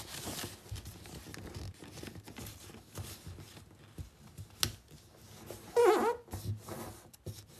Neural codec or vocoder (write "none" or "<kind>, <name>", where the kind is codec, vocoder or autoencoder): none